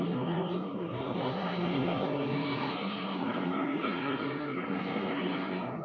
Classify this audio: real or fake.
fake